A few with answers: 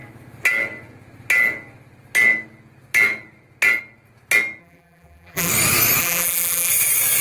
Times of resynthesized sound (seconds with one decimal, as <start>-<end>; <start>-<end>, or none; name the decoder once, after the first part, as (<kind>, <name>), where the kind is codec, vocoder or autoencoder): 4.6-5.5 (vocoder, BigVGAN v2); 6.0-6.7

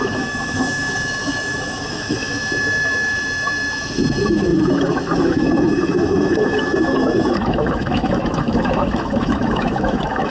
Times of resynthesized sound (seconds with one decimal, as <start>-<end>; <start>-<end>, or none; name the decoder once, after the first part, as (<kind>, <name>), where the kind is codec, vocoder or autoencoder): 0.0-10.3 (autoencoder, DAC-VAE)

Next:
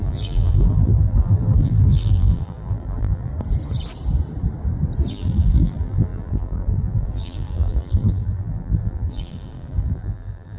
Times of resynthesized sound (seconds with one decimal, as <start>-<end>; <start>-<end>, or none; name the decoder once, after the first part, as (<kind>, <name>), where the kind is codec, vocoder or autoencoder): 0.0-3.3 (vocoder, BigVGAN v2); 5.1-10.6

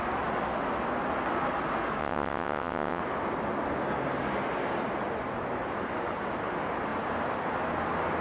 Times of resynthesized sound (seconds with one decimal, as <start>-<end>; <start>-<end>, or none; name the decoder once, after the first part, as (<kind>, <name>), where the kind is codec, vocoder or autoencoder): 2.0-3.0 (vocoder, WaveNeXt)